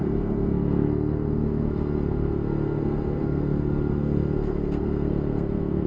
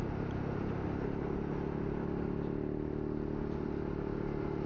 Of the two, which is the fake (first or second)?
first